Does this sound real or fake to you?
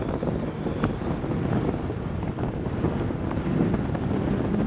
real